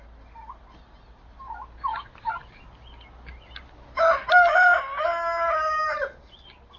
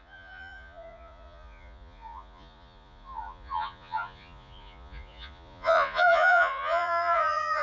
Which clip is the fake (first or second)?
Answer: second